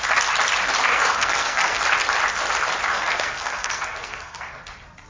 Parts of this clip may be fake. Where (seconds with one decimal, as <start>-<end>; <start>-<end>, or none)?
0.9-1.8; 2.9-4.6